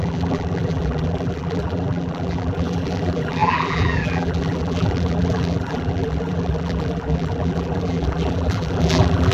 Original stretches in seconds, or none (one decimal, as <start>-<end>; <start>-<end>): none